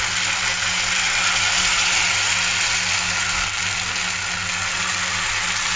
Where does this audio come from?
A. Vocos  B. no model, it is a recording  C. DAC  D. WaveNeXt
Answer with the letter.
B